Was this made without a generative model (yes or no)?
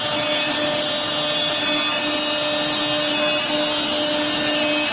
yes